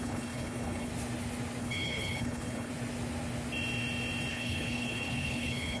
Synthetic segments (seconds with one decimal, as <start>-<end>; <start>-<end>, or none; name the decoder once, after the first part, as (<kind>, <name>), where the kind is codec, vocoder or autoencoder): 0.0-0.9 (codec, HILCodec); 1.6-2.7; 4.3-5.8